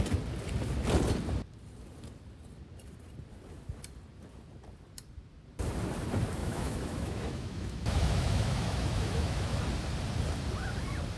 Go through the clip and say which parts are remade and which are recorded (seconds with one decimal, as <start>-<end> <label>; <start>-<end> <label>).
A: 0.0-6.4 recorded; 6.4-9.6 remade; 9.6-11.2 recorded